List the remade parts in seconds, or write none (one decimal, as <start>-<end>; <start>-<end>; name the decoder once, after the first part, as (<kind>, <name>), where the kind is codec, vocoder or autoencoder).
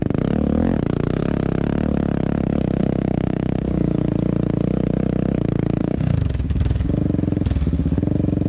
2.8-4.0 (codec, DAC); 5.8-7.0